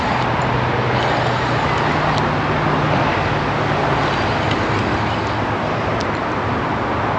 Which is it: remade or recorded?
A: recorded